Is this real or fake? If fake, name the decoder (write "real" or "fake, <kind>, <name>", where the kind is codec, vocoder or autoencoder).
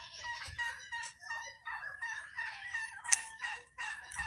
fake, autoencoder, DAC-VAE